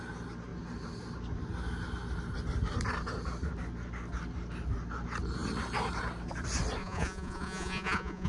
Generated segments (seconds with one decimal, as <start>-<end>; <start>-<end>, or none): 6.8-8.3